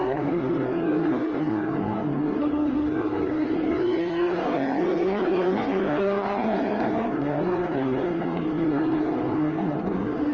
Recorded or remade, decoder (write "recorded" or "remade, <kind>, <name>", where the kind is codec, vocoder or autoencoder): remade, codec, SNAC